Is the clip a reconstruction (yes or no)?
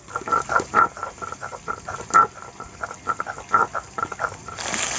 no